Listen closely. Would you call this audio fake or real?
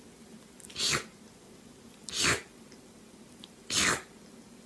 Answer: real